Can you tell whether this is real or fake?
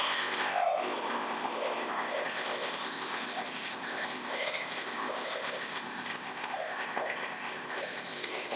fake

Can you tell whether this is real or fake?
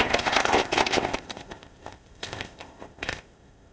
fake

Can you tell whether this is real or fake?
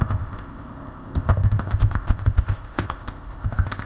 fake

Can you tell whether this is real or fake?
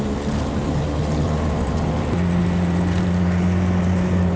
real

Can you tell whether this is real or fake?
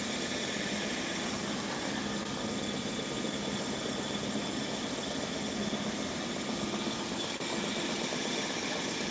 real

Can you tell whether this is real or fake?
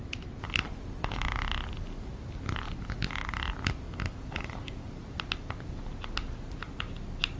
real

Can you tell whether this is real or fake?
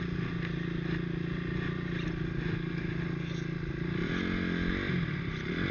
real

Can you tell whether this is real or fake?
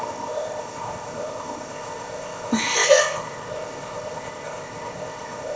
fake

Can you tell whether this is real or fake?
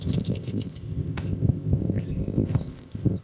fake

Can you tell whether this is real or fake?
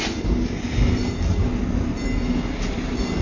real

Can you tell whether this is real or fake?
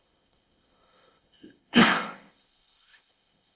fake